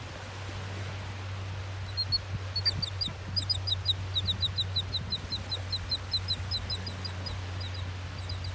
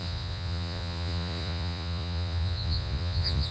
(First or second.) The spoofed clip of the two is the second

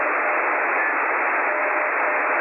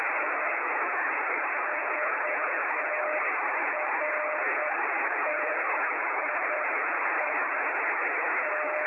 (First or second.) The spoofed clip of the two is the second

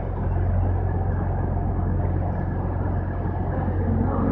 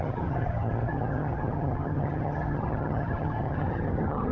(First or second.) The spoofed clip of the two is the second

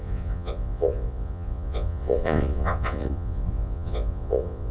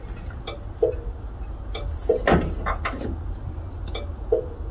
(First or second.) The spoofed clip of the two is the first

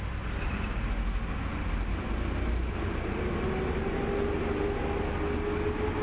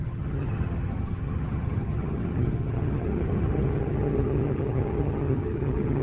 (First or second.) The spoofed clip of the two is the second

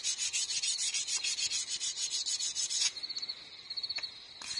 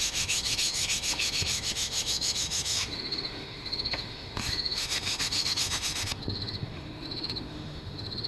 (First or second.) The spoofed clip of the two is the second